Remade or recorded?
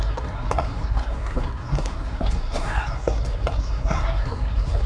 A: remade